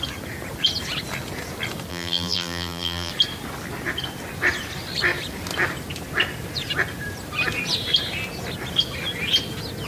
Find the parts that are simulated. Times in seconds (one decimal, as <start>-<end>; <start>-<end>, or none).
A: 1.9-3.1